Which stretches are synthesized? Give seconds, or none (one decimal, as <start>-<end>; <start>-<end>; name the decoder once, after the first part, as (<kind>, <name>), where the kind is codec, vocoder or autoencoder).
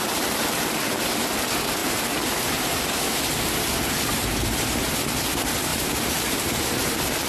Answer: 1.8-2.6 (vocoder, BigVGAN v2); 5.7-6.6